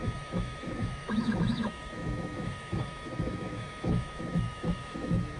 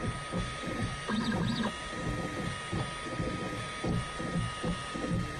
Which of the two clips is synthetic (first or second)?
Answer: first